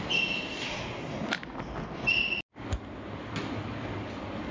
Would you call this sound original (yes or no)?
yes